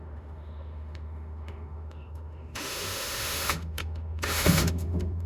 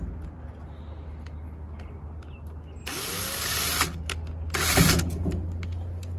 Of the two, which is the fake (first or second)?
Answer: first